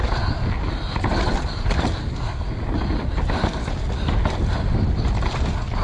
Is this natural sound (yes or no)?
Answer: yes